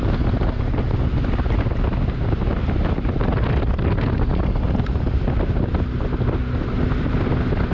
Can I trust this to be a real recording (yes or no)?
yes